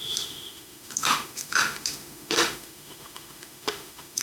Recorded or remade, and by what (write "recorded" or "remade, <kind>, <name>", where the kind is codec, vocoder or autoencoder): remade, autoencoder, DAC-VAE